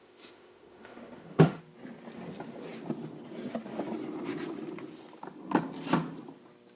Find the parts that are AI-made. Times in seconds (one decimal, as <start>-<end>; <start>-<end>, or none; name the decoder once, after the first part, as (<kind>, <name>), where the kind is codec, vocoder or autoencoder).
0.0-1.6 (autoencoder, DAC-VAE)